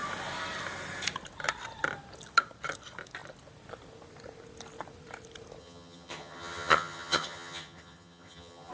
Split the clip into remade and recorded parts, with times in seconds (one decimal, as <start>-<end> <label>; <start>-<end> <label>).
0.0-5.6 recorded; 5.6-8.7 remade